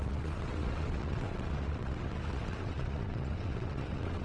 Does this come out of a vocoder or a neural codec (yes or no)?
yes